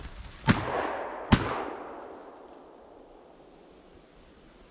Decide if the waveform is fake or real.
real